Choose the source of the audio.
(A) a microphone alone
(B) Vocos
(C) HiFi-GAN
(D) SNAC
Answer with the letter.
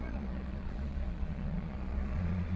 B